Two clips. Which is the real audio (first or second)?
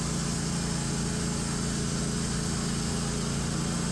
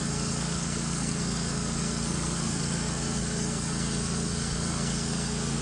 first